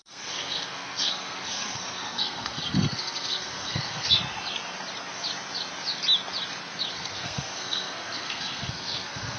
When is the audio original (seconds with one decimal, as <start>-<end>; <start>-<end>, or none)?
4.2-6.9